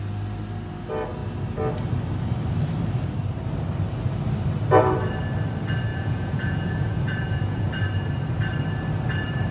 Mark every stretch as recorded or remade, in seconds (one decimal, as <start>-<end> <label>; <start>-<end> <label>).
0.0-5.9 recorded; 5.9-7.7 remade; 7.7-9.5 recorded